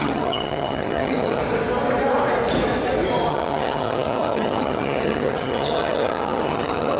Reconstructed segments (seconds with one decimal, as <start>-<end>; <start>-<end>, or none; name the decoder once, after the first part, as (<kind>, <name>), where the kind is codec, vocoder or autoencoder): 0.0-1.4 (vocoder, HiFi-GAN); 3.3-7.0